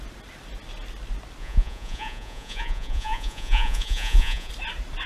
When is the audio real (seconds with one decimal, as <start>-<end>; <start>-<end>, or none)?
0.0-1.4; 4.5-5.1